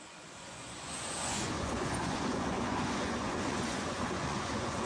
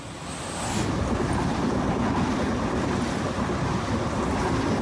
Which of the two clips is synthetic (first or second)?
first